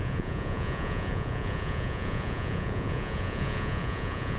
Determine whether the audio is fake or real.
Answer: fake